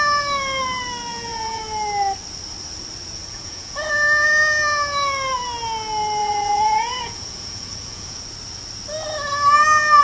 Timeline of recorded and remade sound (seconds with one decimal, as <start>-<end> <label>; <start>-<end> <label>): 0.0-1.1 recorded; 1.1-1.6 remade; 1.6-3.2 recorded; 3.2-3.9 remade; 3.9-6.2 recorded; 6.2-8.2 remade; 8.2-10.0 recorded